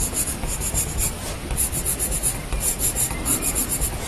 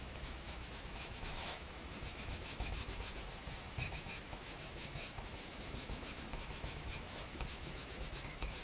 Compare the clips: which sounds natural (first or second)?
first